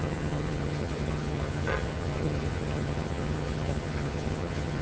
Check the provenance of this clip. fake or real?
fake